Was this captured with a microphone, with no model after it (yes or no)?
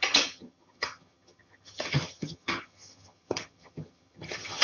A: no